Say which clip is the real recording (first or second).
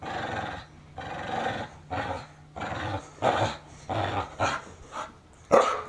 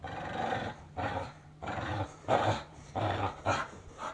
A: first